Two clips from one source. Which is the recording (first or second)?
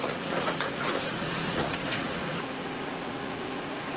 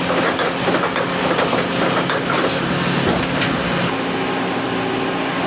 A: second